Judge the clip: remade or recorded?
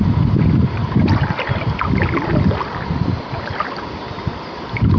recorded